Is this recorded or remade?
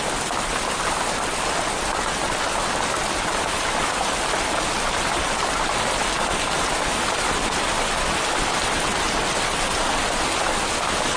recorded